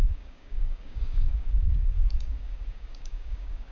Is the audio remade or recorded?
remade